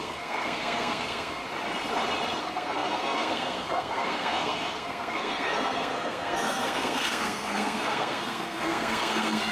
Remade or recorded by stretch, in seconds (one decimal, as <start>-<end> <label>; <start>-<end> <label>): 0.0-1.4 remade; 1.4-2.4 recorded; 2.4-9.5 remade